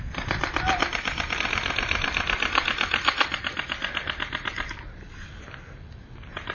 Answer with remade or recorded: recorded